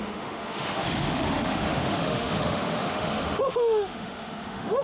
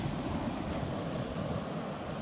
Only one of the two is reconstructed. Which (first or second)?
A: first